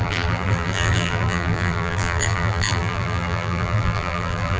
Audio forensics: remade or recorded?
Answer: remade